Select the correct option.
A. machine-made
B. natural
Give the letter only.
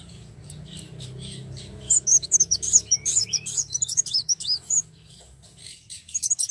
A